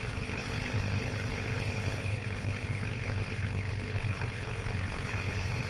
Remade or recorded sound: remade